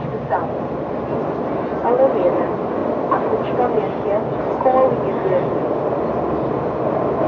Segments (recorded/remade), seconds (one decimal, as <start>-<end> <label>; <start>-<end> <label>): 0.0-7.3 recorded